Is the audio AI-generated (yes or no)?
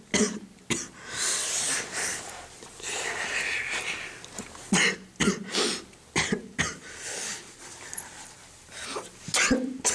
no